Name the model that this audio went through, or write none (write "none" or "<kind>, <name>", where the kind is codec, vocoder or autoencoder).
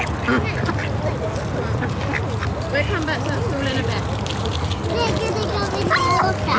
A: none